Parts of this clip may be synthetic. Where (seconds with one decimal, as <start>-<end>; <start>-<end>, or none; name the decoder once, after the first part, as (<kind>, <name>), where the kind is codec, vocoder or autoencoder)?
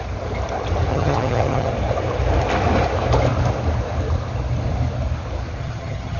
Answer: 0.9-1.7 (vocoder, HiFi-GAN); 5.6-6.2